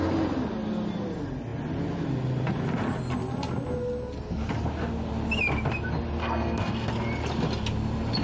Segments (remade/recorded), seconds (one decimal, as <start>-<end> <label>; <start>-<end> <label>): 0.0-6.2 recorded; 6.2-6.9 remade; 6.9-8.2 recorded